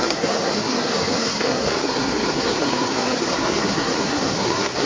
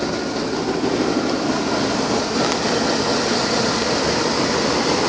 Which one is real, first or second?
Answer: second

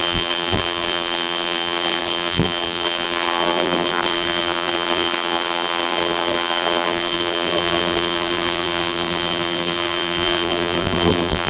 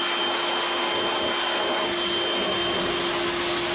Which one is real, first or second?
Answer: second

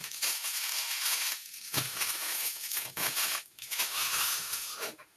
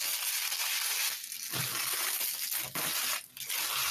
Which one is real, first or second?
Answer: second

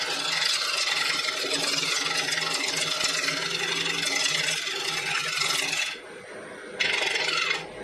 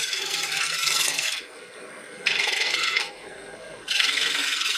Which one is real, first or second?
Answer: first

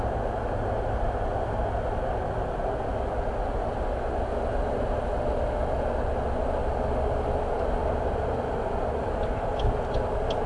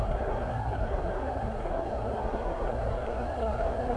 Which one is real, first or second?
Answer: first